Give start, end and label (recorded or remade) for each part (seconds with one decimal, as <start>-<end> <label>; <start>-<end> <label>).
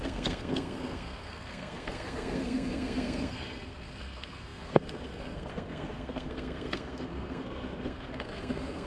0.0-8.9 remade